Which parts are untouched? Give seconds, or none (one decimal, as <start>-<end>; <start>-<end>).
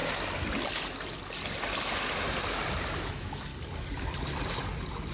0.0-3.1; 3.5-5.1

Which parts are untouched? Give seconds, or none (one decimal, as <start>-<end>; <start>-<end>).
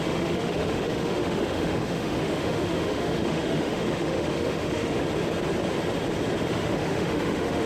5.0-6.5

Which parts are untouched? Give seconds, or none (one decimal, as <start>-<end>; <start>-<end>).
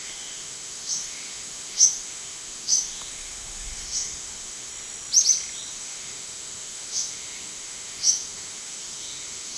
4.7-5.7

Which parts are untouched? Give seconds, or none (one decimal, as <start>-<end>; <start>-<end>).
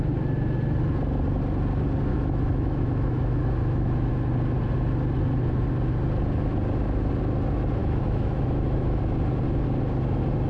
0.0-2.1; 4.1-7.8; 9.0-10.5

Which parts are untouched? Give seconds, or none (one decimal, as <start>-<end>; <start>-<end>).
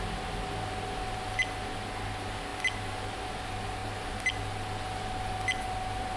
0.0-6.2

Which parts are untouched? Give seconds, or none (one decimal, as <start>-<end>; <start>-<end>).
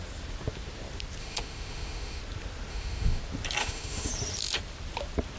0.0-1.2; 2.2-2.7; 3.2-3.6; 4.1-5.4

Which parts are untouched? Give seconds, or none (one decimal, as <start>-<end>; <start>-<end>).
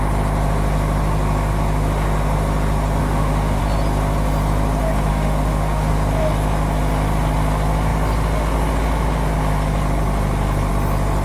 0.0-3.0; 3.6-5.1; 5.9-11.2